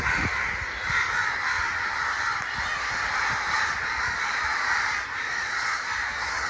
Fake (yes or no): no